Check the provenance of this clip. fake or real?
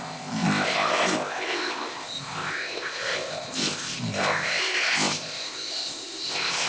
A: fake